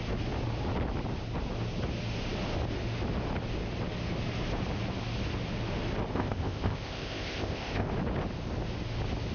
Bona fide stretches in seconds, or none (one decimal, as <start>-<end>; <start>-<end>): 0.0-6.1; 7.9-9.3